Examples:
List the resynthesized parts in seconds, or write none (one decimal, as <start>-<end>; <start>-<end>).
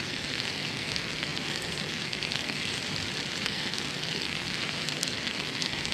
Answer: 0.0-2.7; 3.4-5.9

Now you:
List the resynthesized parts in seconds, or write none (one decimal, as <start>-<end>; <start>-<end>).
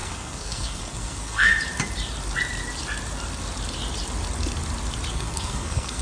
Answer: 0.0-1.5; 5.1-6.0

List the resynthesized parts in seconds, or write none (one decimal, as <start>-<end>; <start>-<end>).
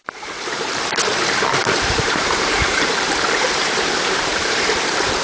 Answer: 1.6-4.7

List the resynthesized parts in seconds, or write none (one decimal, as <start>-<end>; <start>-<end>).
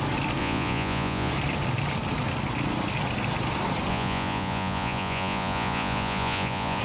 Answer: 0.4-1.3; 3.9-6.8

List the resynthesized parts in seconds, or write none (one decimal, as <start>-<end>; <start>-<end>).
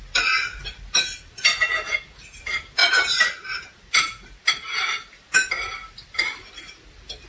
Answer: none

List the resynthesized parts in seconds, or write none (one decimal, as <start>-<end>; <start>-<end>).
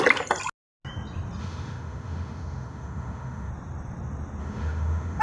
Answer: 1.4-3.5; 4.4-5.2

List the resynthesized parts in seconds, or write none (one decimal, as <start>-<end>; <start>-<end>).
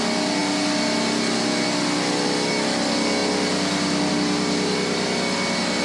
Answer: none